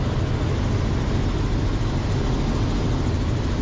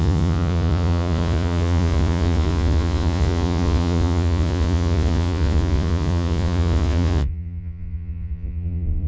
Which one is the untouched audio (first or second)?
first